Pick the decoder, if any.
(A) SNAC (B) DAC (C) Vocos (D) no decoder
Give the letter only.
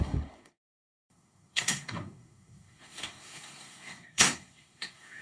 A